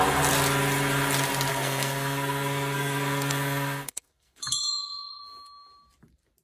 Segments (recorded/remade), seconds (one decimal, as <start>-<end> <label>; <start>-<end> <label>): 0.0-1.5 recorded; 1.5-5.2 remade; 5.2-6.4 recorded